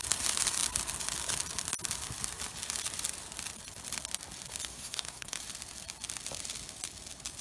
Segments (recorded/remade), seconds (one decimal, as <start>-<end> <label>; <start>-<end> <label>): 0.0-4.7 recorded; 4.7-5.4 remade; 5.4-7.4 recorded